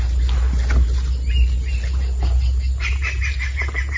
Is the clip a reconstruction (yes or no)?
no